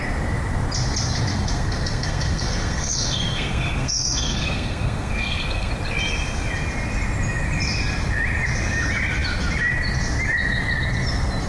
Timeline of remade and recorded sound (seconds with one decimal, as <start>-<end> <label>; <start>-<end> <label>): 0.0-1.3 recorded; 1.3-5.7 remade; 5.7-11.5 recorded

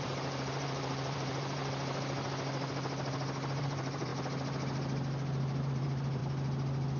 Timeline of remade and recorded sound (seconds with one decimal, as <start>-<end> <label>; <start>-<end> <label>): 0.0-1.6 remade; 1.6-3.6 recorded; 3.6-4.1 remade; 4.1-5.7 recorded; 5.7-6.2 remade; 6.2-7.0 recorded

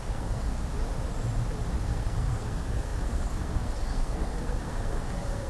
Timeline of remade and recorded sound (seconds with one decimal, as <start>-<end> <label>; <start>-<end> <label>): 0.0-0.6 remade; 0.6-1.8 recorded; 1.8-5.5 remade

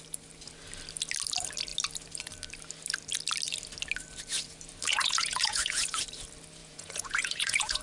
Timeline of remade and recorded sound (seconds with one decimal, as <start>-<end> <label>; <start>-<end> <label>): 0.0-4.9 recorded; 4.9-6.0 remade; 6.0-6.6 recorded; 6.6-7.8 remade

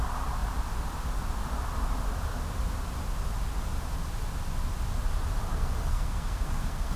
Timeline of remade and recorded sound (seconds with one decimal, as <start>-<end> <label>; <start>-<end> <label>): 0.0-5.5 recorded; 5.5-7.0 remade

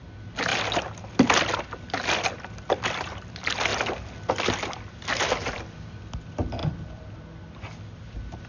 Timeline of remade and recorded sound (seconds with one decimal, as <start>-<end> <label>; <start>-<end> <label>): 0.0-8.5 recorded

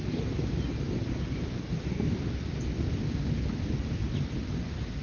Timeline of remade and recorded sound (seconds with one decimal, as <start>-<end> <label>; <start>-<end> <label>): 0.0-5.0 recorded

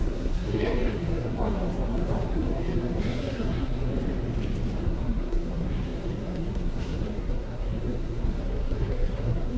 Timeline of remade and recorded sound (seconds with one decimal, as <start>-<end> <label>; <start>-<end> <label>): 0.0-3.9 remade; 3.9-4.8 recorded; 4.8-9.6 remade